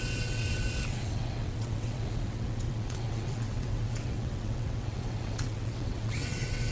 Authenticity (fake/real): fake